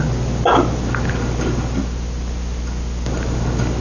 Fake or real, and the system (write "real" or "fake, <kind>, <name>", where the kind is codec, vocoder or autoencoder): real